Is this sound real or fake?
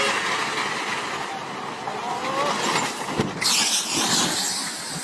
real